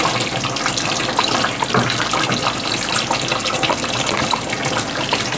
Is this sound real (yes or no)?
yes